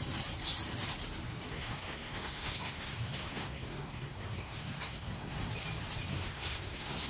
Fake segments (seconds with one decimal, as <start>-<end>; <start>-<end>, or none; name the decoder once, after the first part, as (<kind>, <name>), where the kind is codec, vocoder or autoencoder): 1.5-5.5 (codec, SNAC); 6.1-7.1